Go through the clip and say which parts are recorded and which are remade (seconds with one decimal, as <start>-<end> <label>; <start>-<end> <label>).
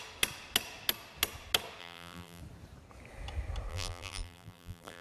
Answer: 0.0-1.8 recorded; 1.8-2.4 remade; 2.4-3.7 recorded; 3.7-5.0 remade